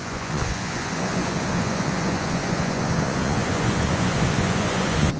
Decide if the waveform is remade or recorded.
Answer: remade